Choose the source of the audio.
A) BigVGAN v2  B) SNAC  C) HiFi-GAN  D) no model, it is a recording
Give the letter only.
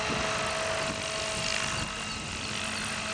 D